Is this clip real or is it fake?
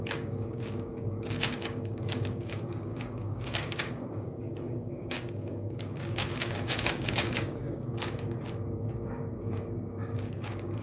fake